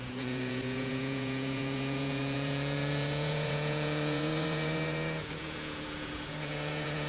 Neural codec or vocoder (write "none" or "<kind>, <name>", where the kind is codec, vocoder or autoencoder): vocoder, Vocos